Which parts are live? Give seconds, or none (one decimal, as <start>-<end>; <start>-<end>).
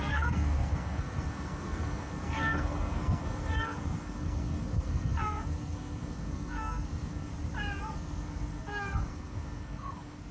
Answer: 7.3-7.8